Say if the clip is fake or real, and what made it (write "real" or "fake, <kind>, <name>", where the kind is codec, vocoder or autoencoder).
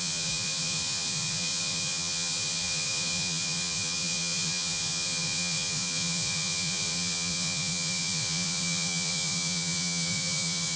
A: fake, vocoder, Vocos